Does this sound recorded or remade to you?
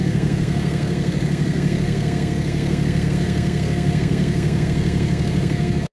remade